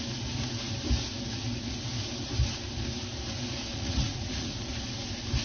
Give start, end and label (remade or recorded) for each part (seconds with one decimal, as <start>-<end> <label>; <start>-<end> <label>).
0.0-3.7 recorded; 3.7-4.7 remade; 4.7-5.4 recorded